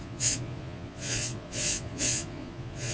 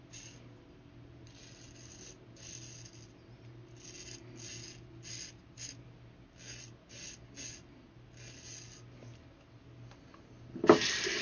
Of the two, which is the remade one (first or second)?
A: first